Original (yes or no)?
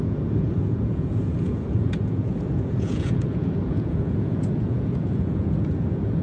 no